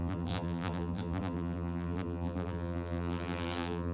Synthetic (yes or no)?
yes